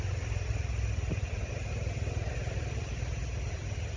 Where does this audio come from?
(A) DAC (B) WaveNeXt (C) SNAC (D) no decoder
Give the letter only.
D